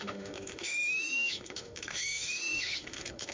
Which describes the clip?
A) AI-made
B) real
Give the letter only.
A